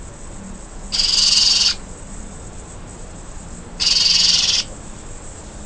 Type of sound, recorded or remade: recorded